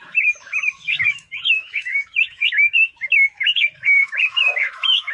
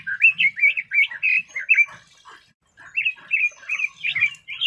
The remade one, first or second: first